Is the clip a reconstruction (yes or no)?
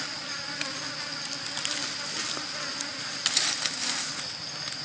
no